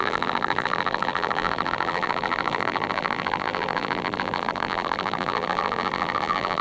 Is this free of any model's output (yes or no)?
no